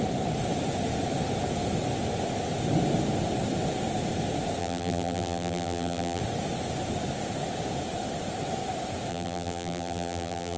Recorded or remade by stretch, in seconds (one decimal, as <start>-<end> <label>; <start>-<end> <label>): 0.0-4.6 recorded; 4.6-6.2 remade; 6.2-9.1 recorded; 9.1-10.6 remade